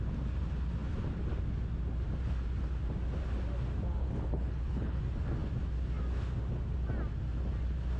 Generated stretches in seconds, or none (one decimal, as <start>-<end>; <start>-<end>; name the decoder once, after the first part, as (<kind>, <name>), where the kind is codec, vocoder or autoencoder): 4.0-5.0 (codec, HILCodec)